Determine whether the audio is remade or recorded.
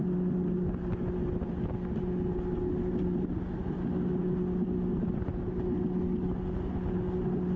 recorded